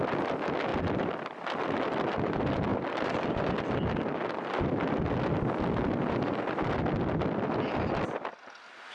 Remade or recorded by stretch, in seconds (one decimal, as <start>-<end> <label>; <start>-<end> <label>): 0.0-0.7 recorded; 0.7-2.3 remade; 2.3-2.7 recorded; 2.7-4.7 remade; 4.7-8.9 recorded